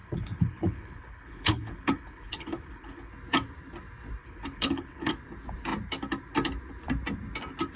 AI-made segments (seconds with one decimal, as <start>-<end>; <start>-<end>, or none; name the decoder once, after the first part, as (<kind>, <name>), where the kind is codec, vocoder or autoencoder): 0.0-3.1 (codec, HILCodec); 4.2-5.1